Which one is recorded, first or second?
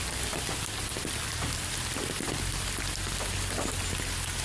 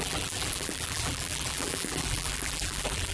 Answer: first